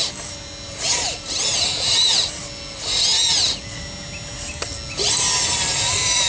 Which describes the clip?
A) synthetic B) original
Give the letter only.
B